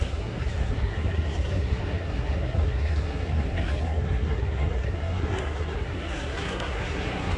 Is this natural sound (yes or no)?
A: no